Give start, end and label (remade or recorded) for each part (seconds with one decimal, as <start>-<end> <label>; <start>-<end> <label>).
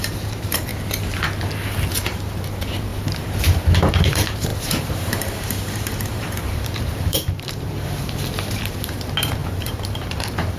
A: 0.0-0.7 remade; 0.7-1.9 recorded; 1.9-10.6 remade